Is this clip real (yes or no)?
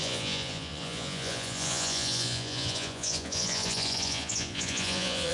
no